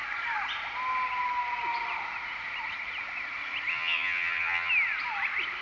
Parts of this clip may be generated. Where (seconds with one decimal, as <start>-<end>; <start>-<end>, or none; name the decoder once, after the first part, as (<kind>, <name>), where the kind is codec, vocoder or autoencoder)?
3.7-4.7 (vocoder, HiFi-GAN)